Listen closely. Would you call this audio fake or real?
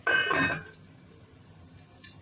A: real